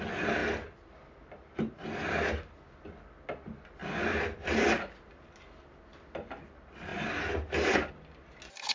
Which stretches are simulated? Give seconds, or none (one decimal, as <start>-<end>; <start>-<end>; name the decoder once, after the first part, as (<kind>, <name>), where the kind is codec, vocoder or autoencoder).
none